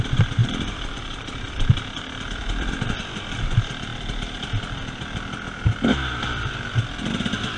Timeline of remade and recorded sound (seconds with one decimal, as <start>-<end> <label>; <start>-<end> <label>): 0.0-3.9 remade; 3.9-6.2 recorded; 6.2-7.6 remade